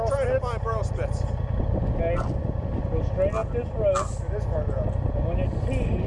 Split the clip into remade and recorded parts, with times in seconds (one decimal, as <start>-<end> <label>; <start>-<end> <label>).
0.0-6.1 recorded